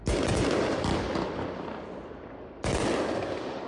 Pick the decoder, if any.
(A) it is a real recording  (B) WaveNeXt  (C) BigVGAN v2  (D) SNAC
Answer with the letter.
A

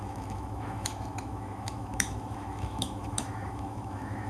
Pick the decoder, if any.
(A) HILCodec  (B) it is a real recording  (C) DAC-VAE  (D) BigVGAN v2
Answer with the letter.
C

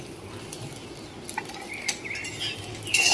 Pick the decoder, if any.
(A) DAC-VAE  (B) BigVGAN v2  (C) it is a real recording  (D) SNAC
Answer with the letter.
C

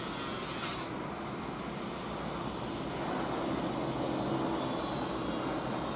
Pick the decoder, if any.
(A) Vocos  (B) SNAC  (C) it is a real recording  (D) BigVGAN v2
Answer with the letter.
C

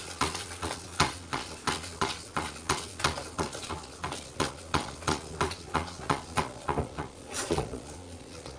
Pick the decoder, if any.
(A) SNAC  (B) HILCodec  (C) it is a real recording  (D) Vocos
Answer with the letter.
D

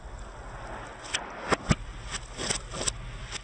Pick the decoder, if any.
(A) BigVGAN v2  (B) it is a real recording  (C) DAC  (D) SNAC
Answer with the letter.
B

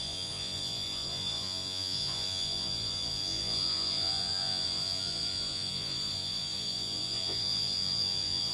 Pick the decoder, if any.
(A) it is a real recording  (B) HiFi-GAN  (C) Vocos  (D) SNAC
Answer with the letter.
C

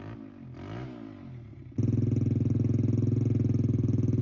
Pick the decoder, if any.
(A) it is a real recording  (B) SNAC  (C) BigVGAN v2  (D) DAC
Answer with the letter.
A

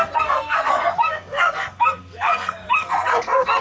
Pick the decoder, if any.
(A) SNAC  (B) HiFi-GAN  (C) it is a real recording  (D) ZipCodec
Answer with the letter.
A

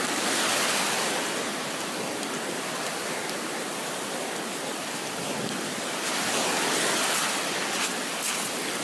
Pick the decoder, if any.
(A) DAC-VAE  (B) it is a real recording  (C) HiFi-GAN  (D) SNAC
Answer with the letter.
B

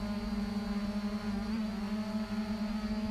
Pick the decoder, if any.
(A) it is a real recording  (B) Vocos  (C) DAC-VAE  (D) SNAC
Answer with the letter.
A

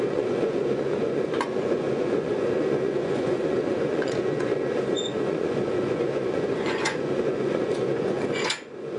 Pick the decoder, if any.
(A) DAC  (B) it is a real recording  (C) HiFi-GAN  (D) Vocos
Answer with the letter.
D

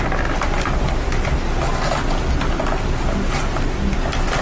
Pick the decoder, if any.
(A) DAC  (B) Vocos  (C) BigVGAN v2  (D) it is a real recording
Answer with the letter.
D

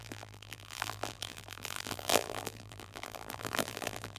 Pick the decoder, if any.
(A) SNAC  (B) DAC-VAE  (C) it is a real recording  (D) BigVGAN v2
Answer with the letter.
D